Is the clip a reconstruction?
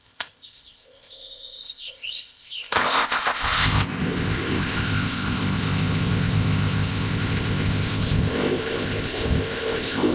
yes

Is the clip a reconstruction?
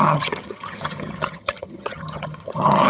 yes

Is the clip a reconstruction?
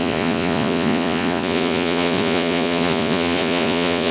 yes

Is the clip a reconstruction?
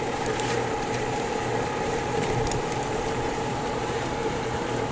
yes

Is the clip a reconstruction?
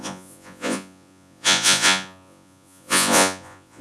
yes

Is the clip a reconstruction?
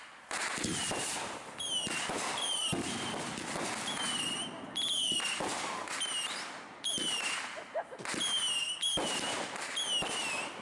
no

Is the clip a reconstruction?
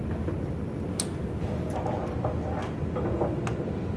no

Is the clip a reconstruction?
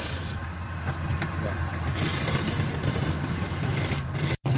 yes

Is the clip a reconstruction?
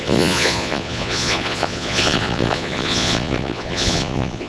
yes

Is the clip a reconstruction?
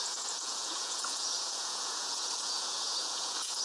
yes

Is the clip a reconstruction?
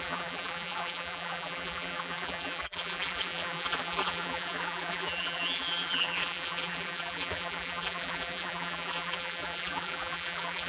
yes